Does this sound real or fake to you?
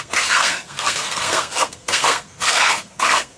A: fake